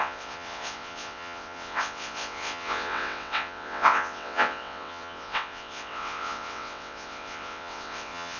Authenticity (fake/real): fake